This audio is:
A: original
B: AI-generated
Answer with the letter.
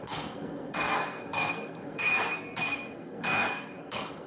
B